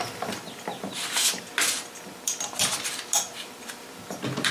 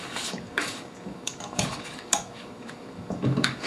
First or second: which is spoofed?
second